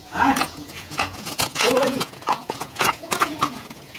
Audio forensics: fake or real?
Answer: fake